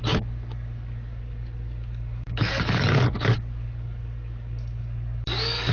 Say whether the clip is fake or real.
fake